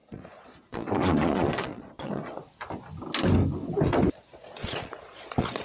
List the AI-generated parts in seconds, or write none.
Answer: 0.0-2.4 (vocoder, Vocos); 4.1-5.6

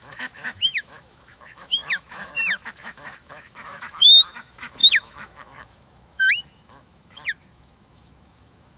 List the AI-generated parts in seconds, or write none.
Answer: 0.0-8.8 (autoencoder, DAC-VAE)

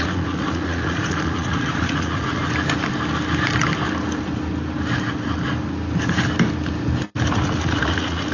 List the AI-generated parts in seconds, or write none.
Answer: 0.0-2.4 (vocoder, Vocos); 7.3-8.3

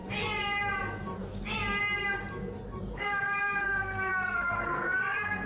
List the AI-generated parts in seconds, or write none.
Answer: 2.9-5.5 (codec, SNAC)